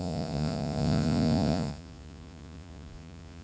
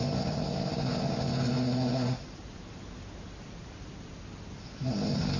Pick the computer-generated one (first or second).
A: first